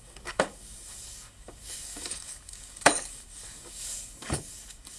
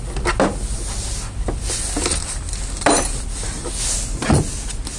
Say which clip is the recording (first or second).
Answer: second